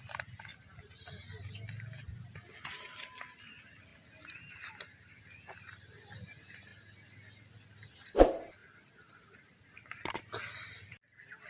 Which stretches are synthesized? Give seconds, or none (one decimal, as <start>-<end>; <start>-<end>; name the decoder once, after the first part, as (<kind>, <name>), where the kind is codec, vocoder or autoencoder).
none